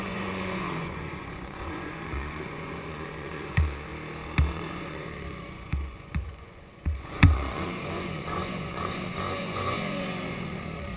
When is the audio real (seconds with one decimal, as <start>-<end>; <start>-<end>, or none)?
3.9-4.5